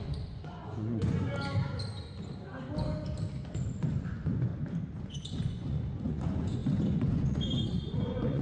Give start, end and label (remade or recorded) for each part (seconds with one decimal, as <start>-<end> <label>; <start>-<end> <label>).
0.0-1.3 remade; 1.3-3.8 recorded; 3.8-4.5 remade; 4.5-5.0 recorded; 5.0-8.4 remade